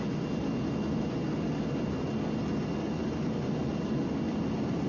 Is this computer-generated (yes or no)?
no